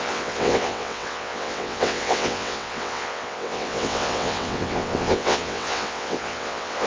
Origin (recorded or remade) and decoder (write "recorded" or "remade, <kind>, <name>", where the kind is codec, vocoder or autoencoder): remade, vocoder, WaveNeXt